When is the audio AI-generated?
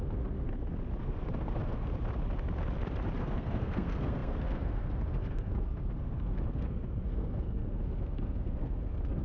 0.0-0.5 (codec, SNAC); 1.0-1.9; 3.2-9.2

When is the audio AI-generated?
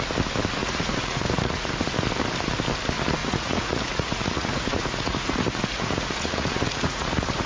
0.6-1.7 (vocoder, Vocos); 3.2-7.5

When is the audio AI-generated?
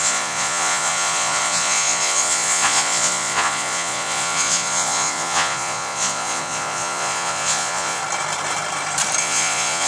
0.0-8.0 (vocoder, Vocos); 9.2-9.9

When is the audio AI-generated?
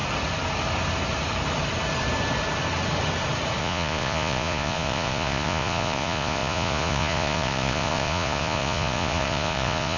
3.6-10.0 (vocoder, Vocos)